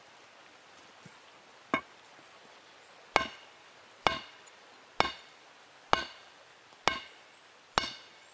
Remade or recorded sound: recorded